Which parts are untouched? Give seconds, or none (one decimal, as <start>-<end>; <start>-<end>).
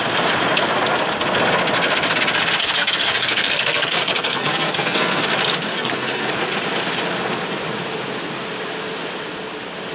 0.0-2.6; 5.2-5.7; 6.3-9.9